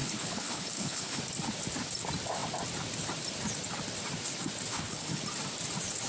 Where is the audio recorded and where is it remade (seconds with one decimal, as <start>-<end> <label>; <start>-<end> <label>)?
0.0-1.2 remade; 1.2-4.7 recorded; 4.7-5.2 remade; 5.2-6.1 recorded